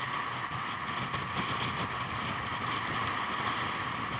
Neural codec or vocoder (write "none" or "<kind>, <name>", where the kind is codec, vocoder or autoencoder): none